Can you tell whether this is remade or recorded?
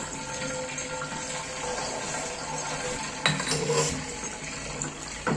recorded